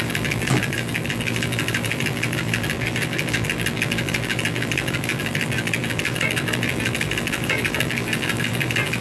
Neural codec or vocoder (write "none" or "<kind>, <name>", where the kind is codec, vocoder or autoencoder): vocoder, BigVGAN v2